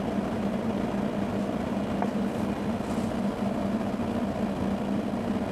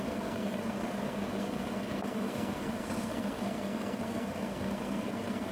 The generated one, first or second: second